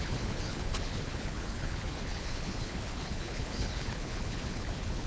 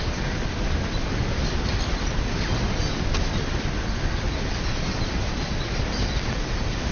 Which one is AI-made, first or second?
first